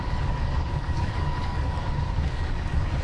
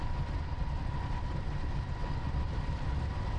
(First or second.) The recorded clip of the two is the second